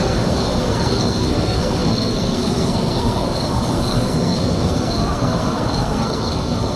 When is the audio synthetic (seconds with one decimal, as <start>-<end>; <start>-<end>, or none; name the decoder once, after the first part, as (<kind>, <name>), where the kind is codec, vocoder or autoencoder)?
0.0-6.8 (codec, SNAC)